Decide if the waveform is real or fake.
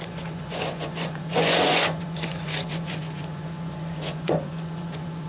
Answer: fake